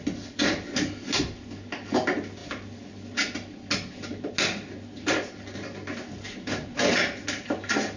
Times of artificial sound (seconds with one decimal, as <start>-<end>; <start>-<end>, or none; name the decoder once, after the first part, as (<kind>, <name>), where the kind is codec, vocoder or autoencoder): none